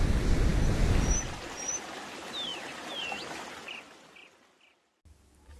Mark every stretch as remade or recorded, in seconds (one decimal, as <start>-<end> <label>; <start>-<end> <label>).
0.0-5.6 recorded